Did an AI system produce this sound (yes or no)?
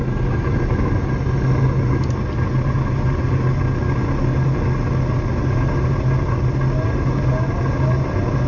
no